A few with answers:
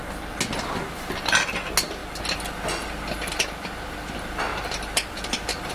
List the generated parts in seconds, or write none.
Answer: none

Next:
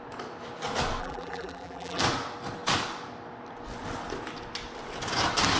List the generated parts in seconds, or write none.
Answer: 1.0-2.0 (vocoder, BigVGAN v2)